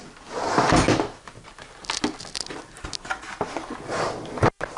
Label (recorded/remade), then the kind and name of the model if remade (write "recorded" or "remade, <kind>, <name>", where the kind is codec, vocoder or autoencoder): recorded